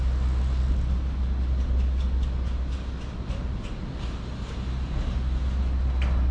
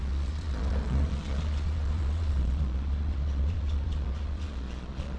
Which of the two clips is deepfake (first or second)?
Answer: second